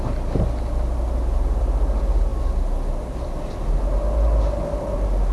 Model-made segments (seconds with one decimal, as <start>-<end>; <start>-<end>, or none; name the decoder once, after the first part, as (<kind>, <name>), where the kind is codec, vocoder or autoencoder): none